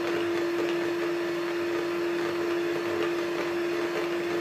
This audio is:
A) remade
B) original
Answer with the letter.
B